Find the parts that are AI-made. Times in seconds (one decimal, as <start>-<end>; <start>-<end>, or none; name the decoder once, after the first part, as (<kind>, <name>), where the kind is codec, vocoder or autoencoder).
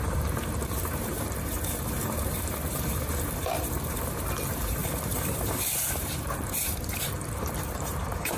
0.0-8.4 (vocoder, BigVGAN v2)